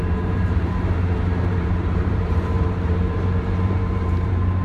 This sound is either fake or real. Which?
fake